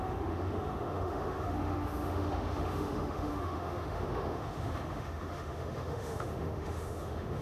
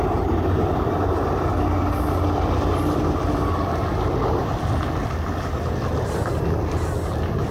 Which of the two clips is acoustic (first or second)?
second